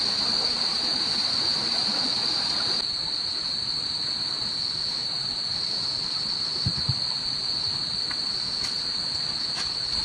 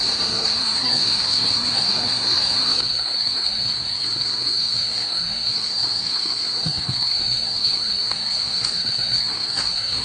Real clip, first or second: first